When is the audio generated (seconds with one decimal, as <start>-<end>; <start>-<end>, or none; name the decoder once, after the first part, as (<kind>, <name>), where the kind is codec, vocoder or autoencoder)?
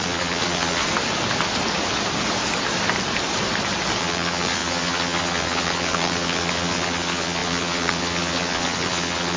0.0-0.8 (vocoder, Vocos); 4.0-9.4